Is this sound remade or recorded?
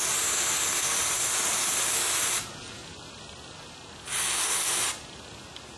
recorded